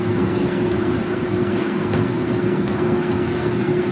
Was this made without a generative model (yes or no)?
no